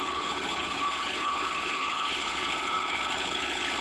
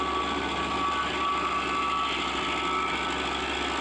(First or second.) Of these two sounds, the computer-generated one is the first